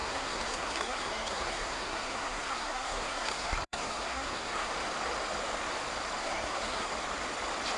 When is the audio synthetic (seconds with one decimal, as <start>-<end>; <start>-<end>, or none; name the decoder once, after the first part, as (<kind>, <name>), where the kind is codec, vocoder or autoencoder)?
0.0-4.7 (codec, SNAC); 6.2-6.9